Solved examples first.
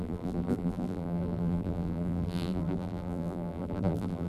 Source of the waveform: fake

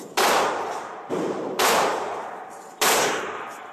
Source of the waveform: fake